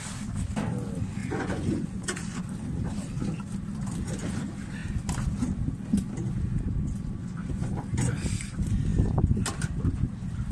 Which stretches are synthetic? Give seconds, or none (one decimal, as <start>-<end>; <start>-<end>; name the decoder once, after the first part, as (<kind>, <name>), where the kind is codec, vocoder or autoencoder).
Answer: 1.2-2.4 (vocoder, Vocos); 7.2-7.7